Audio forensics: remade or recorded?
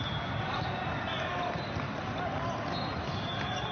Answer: recorded